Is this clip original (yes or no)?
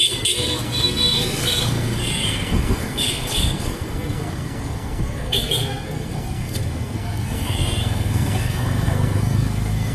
no